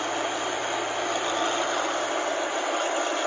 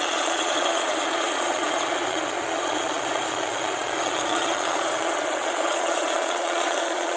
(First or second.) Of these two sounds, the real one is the first